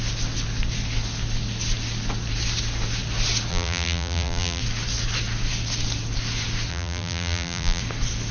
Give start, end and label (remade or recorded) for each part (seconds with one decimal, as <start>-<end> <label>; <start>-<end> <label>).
0.0-3.5 recorded; 3.5-4.6 remade; 4.6-6.7 recorded; 6.7-7.8 remade; 7.8-8.3 recorded